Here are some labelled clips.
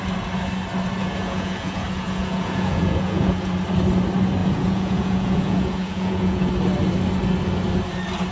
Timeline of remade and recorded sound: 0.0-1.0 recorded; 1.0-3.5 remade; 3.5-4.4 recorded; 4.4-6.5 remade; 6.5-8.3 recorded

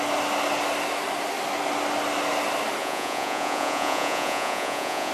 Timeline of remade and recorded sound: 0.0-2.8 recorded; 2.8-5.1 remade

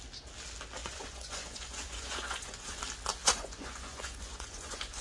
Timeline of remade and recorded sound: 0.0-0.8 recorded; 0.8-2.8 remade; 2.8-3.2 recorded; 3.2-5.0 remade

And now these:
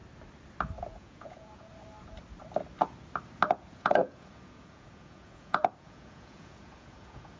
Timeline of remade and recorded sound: 0.0-0.8 recorded; 0.8-1.7 remade; 1.7-3.5 recorded; 3.5-7.4 remade

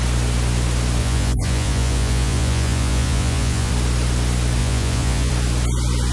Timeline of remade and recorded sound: 0.0-1.0 recorded; 1.0-3.7 remade; 3.7-4.6 recorded; 4.6-5.3 remade; 5.3-6.1 recorded

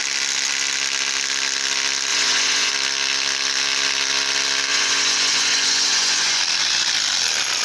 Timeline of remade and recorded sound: 0.0-2.1 recorded; 2.1-2.7 remade; 2.7-4.7 recorded; 4.7-6.4 remade; 6.4-7.6 recorded